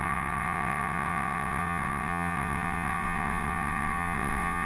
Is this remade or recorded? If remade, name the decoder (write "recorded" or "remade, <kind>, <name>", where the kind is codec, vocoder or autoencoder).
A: remade, vocoder, WaveNeXt